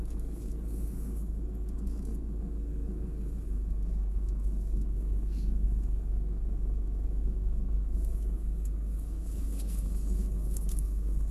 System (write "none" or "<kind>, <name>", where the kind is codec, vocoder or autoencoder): codec, SNAC